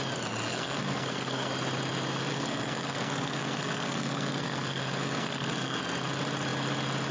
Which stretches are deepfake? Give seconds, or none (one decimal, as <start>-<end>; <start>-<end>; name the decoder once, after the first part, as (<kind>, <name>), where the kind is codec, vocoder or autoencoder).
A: 0.5-1.5 (codec, SNAC); 2.3-5.8